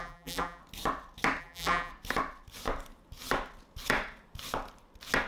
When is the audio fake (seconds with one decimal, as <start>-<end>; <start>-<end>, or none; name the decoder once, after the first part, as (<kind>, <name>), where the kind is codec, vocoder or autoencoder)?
0.0-0.6 (vocoder, BigVGAN v2); 1.4-1.9